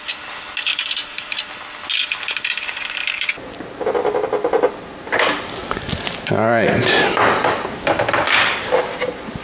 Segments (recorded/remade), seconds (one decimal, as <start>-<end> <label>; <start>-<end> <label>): 0.0-0.7 recorded; 0.7-1.5 remade; 1.5-5.6 recorded; 5.6-6.7 remade; 6.7-9.4 recorded

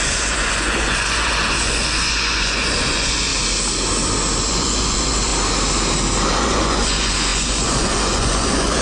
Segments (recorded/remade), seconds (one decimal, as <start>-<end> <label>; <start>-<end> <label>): 0.0-3.3 remade; 3.3-4.5 recorded; 4.5-5.3 remade; 5.3-6.4 recorded; 6.4-8.8 remade